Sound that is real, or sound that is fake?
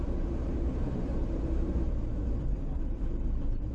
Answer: fake